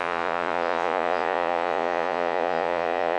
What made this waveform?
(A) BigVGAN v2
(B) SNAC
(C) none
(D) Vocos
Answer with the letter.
D